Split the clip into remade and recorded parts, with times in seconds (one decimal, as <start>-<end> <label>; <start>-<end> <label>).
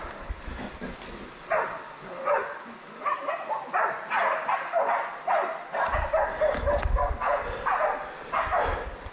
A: 0.0-2.4 recorded; 2.4-3.2 remade; 3.2-9.1 recorded